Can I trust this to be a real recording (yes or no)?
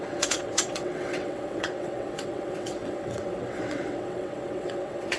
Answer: no